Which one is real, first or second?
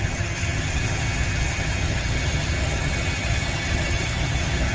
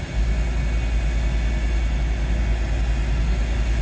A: second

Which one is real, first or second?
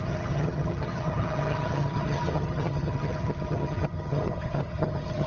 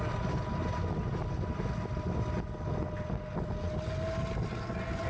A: second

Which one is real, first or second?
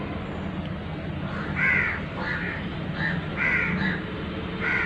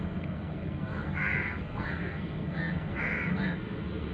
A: first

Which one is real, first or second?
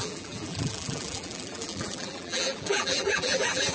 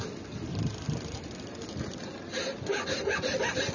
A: second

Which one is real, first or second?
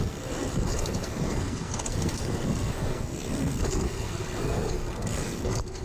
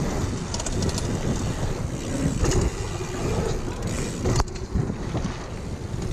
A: second